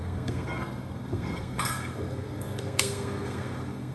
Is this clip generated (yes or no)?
yes